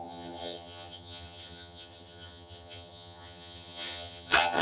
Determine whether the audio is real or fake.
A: fake